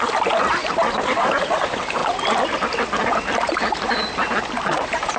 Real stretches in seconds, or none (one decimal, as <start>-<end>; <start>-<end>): 0.0-5.2